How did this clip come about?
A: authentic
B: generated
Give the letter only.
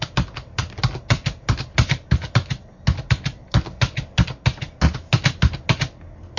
A